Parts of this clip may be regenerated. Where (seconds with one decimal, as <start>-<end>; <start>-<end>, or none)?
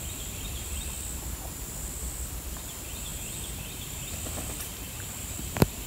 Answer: 3.1-4.0